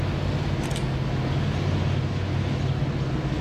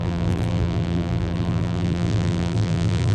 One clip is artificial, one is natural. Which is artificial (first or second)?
second